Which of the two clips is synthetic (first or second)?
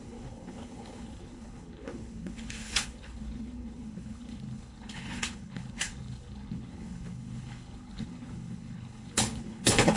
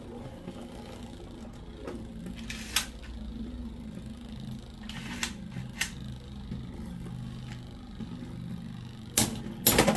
first